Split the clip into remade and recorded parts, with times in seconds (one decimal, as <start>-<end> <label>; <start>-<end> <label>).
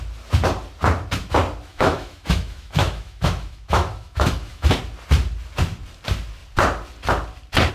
0.0-1.7 recorded; 1.7-4.8 remade; 4.8-7.7 recorded